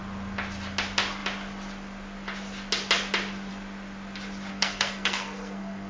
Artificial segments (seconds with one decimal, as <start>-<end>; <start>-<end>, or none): 4.5-5.9